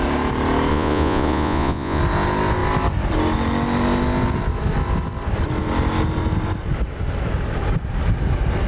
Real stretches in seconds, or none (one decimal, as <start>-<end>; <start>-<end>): 0.0-0.7; 2.0-8.7